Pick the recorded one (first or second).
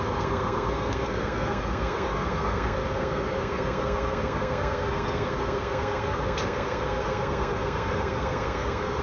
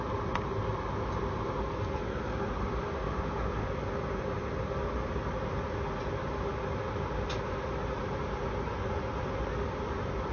second